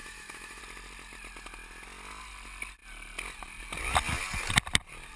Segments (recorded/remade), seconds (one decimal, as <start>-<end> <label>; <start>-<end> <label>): 0.0-0.6 remade; 0.6-5.2 recorded